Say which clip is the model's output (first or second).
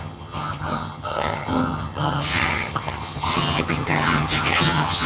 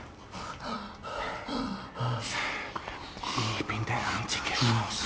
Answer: first